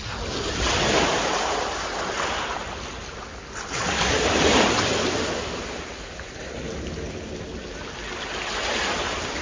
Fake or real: real